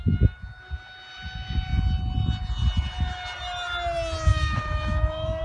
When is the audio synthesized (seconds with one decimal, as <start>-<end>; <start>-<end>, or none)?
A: 4.3-5.4